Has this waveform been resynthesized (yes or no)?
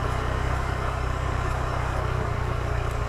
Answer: yes